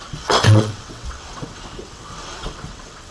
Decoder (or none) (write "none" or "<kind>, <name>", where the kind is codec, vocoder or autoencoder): vocoder, WaveNeXt